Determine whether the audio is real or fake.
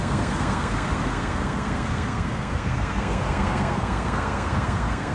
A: fake